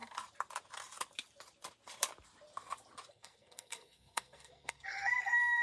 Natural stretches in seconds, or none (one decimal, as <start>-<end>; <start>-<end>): 0.0-3.1